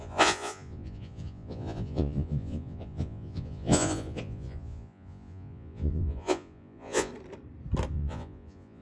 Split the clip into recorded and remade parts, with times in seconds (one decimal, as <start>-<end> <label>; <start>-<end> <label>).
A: 0.0-7.1 remade; 7.1-7.9 recorded; 7.9-8.8 remade